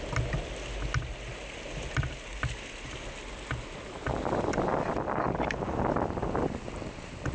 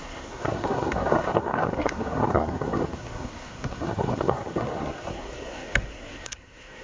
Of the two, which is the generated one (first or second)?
second